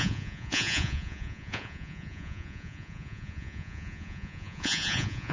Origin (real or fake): fake